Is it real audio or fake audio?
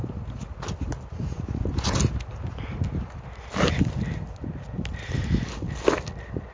real